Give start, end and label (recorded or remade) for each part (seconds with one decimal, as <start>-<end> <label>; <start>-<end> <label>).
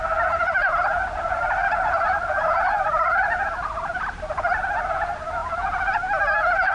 0.0-0.6 recorded; 0.6-4.6 remade; 4.6-5.4 recorded; 5.4-6.7 remade